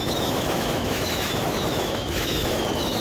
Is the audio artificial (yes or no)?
yes